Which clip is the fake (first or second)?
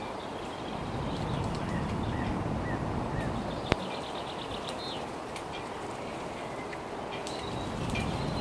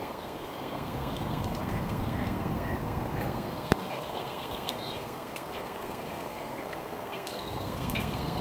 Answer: second